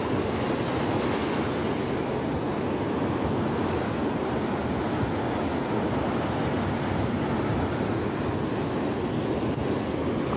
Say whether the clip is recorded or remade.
recorded